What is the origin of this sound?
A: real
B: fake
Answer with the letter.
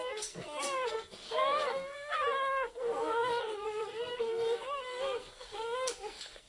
B